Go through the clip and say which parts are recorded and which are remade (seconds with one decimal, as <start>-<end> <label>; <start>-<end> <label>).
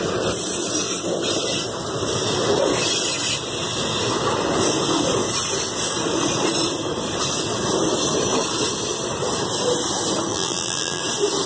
0.0-10.3 recorded; 10.3-11.0 remade; 11.0-11.5 recorded